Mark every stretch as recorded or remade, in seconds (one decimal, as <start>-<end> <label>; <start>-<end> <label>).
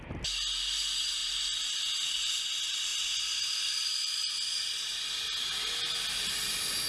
0.0-6.9 recorded